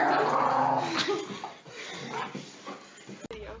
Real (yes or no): yes